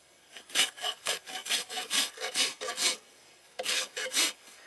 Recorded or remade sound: remade